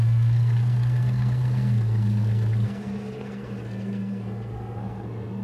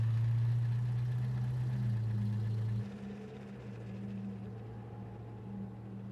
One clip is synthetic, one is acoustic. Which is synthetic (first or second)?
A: first